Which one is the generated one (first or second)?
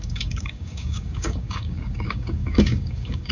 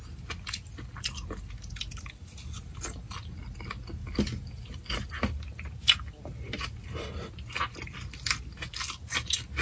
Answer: first